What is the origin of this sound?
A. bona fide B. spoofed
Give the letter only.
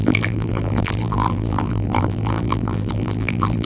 B